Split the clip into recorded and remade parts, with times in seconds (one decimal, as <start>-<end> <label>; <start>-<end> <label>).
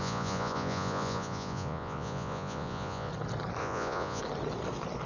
0.0-3.1 remade; 3.1-3.6 recorded; 3.6-4.2 remade; 4.2-5.1 recorded